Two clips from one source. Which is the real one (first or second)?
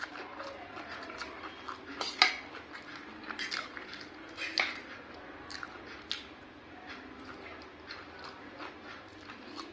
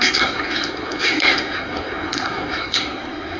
first